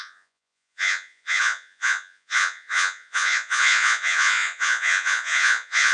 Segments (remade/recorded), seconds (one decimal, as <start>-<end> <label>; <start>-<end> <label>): 0.0-5.9 remade